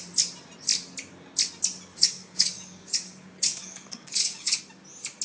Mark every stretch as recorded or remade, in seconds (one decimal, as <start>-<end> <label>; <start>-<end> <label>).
0.0-1.9 recorded; 1.9-4.6 remade; 4.6-5.2 recorded